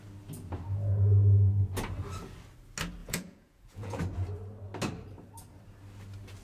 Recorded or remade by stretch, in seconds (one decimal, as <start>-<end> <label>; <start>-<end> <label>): 0.0-3.0 recorded; 3.0-4.0 remade; 4.0-6.4 recorded

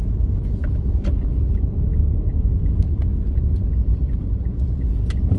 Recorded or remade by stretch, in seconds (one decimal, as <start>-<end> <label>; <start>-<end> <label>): 0.0-0.5 remade; 0.5-2.3 recorded; 2.3-3.1 remade; 3.1-5.4 recorded

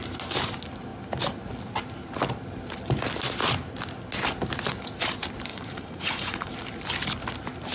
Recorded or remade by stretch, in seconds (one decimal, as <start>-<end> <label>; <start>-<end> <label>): 0.0-5.5 recorded; 5.5-6.5 remade; 6.5-7.7 recorded

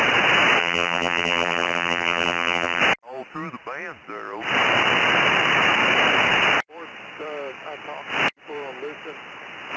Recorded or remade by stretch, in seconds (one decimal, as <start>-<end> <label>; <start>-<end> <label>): 0.0-0.6 recorded; 0.6-2.8 remade; 2.8-9.8 recorded

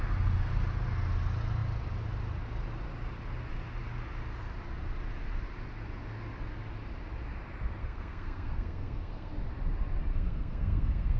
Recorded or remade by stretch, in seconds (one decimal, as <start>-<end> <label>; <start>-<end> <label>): 0.0-7.8 recorded; 7.8-9.3 remade; 9.3-10.0 recorded; 10.0-11.2 remade